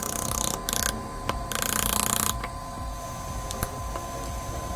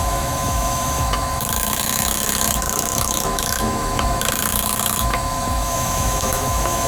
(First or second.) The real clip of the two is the first